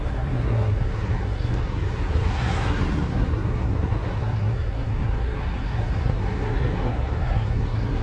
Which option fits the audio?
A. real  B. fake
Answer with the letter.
B